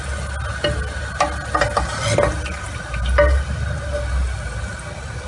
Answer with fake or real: real